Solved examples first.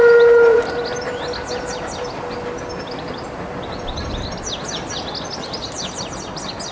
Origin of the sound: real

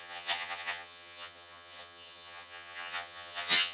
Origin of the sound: fake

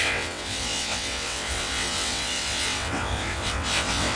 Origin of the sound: fake